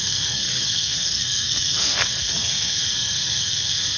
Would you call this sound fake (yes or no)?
yes